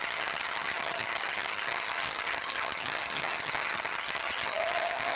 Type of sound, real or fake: fake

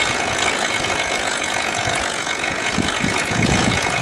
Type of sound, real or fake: fake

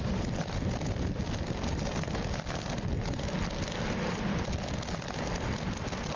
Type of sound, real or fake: real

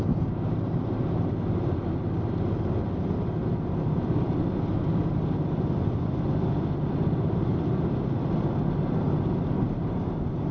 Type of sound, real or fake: real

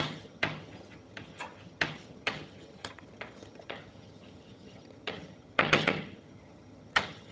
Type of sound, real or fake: fake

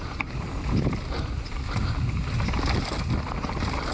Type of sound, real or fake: real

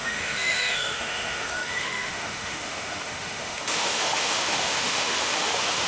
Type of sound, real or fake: fake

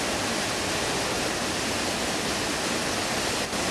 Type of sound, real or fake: real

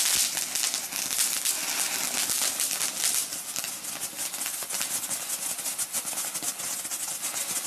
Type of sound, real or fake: real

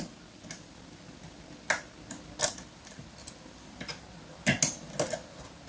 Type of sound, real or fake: real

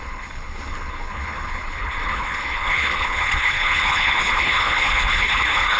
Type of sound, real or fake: fake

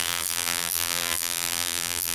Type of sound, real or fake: fake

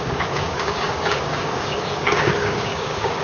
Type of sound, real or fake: fake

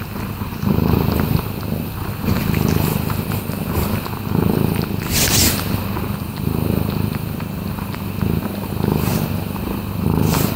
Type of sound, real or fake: real